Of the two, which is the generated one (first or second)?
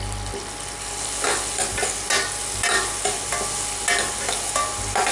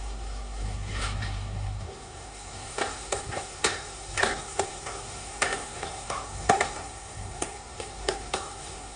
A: second